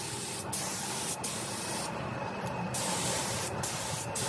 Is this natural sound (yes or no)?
yes